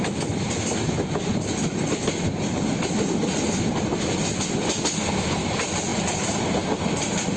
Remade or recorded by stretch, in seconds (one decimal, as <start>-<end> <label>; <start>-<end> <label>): 0.0-7.4 recorded